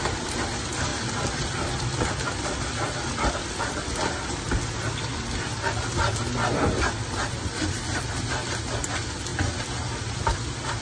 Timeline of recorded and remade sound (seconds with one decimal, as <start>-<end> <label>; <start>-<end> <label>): 0.0-10.8 recorded